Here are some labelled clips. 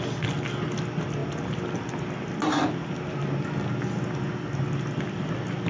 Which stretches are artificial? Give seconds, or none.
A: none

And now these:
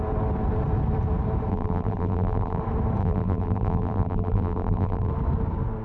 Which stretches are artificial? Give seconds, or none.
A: 1.5-2.6 (vocoder, BigVGAN v2); 3.0-5.1

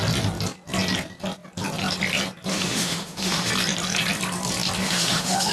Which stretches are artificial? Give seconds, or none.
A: 2.5-3.5 (autoencoder, DAC-VAE); 4.8-5.5

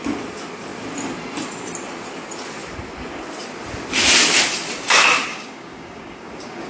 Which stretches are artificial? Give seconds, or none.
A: 5.3-6.7 (codec, DAC)

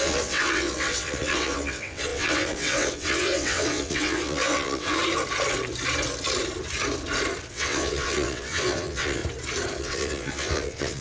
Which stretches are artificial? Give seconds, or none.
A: 0.0-5.0 (vocoder, WaveNeXt); 7.5-9.2; 9.8-11.0

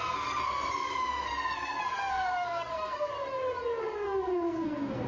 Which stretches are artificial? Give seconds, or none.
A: 0.0-3.1 (codec, SNAC); 3.8-5.1

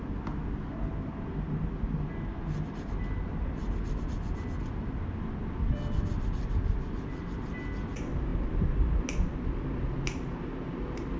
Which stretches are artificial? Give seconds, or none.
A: none